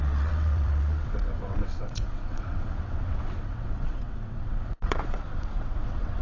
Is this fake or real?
fake